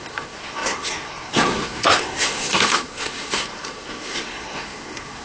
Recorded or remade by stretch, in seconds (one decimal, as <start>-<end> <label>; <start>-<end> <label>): 0.0-5.2 remade